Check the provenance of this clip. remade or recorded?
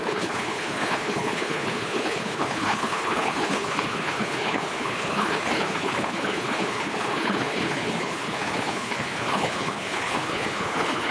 remade